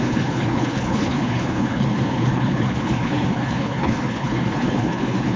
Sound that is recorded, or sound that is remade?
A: remade